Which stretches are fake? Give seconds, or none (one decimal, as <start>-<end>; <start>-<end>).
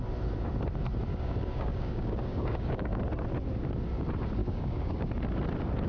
1.1-3.0; 4.4-5.1